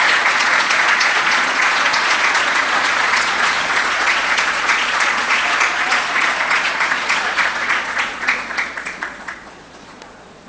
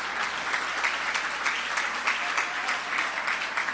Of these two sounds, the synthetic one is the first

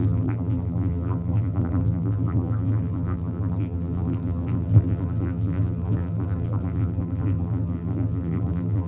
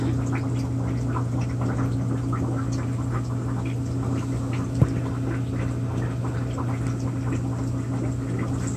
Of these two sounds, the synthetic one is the first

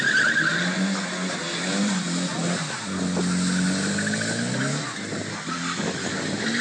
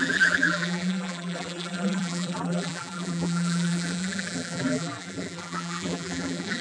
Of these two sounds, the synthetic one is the second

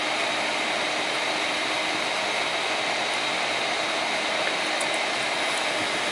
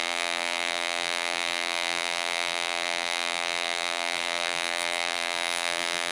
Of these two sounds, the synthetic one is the second